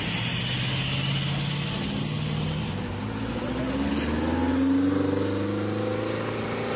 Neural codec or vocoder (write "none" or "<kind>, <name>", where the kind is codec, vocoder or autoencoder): none